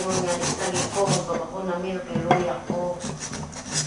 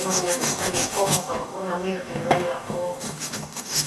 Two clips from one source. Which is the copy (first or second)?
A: second